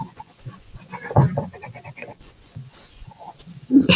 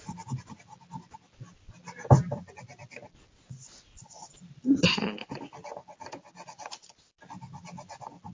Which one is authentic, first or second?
second